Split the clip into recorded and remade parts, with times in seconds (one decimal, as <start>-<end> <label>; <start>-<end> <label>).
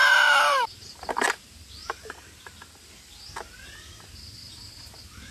0.0-1.1 remade; 1.1-1.8 recorded; 1.8-2.4 remade; 2.4-5.3 recorded